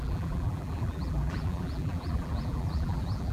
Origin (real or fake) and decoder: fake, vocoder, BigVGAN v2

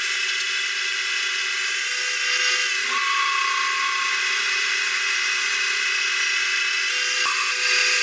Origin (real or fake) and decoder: real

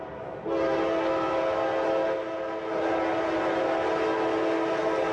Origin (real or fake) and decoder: real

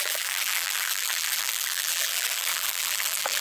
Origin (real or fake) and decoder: fake, vocoder, BigVGAN v2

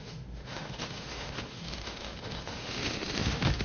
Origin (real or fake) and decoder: fake, autoencoder, DAC-VAE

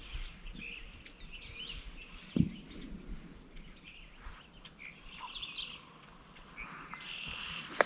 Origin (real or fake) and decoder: real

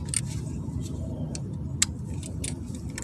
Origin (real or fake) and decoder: real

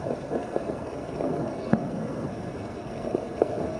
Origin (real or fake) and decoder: fake, codec, SNAC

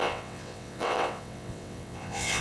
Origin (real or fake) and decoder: fake, vocoder, WaveNeXt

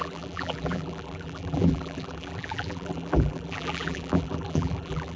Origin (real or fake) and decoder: fake, vocoder, BigVGAN v2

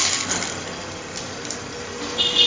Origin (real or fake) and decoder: real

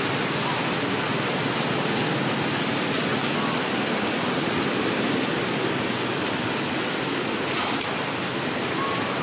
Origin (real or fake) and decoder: real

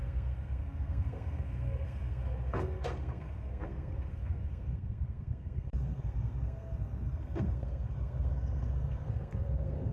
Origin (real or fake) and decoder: fake, codec, SNAC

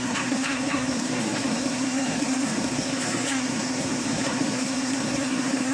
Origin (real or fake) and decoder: fake, codec, SNAC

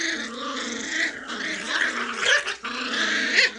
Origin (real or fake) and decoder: real